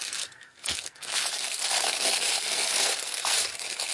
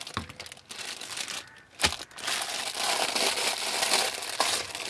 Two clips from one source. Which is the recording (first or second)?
second